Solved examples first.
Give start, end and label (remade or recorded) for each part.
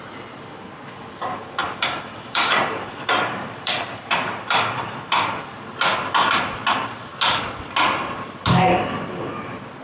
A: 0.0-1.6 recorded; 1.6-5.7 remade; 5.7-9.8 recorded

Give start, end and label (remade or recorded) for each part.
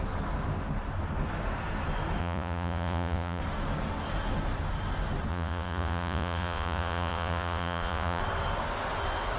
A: 0.0-2.2 recorded; 2.2-3.4 remade; 3.4-5.3 recorded; 5.3-8.2 remade; 8.2-9.4 recorded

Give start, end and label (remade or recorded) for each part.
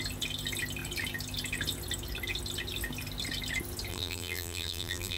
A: 0.0-3.9 recorded; 3.9-5.2 remade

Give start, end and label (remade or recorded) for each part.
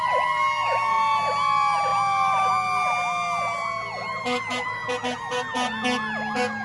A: 0.0-4.1 recorded; 4.1-4.9 remade; 4.9-6.6 recorded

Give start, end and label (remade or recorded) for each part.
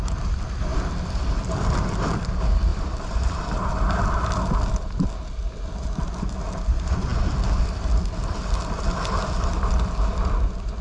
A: 0.0-2.7 recorded; 2.7-3.4 remade; 3.4-10.8 recorded